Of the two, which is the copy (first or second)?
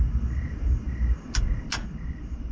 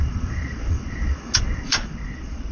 second